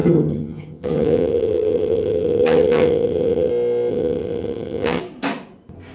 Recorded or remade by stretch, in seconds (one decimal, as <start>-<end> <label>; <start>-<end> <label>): 0.0-3.5 remade; 3.5-3.9 recorded; 3.9-5.0 remade; 5.0-5.9 recorded